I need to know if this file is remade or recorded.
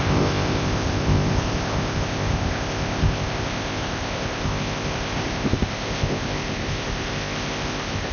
remade